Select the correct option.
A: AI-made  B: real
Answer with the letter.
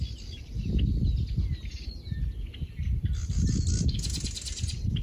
B